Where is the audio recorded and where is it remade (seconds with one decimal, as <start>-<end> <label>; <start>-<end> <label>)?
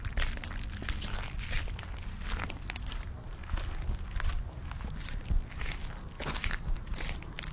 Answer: 0.0-7.5 recorded